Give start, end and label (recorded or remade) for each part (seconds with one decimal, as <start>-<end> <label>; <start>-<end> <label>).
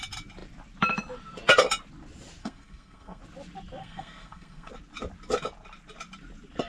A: 0.0-2.4 recorded; 2.4-3.2 remade; 3.2-3.8 recorded; 3.8-4.7 remade; 4.7-6.7 recorded